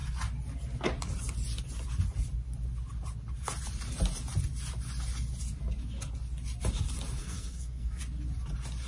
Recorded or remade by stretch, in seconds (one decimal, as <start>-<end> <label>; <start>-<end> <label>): 0.0-7.2 recorded; 7.2-8.0 remade; 8.0-8.9 recorded